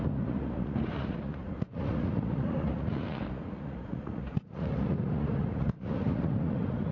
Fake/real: fake